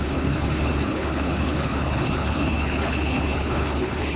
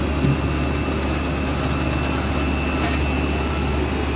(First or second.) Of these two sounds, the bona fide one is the second